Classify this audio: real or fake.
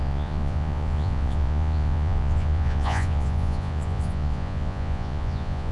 fake